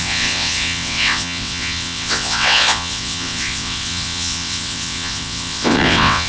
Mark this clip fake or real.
fake